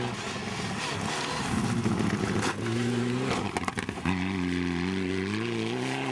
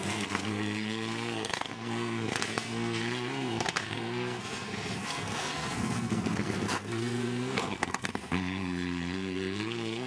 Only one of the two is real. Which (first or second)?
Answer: first